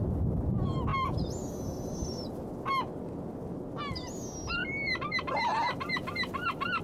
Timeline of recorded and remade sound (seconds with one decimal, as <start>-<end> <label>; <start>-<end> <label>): 0.0-4.6 recorded; 4.6-6.8 remade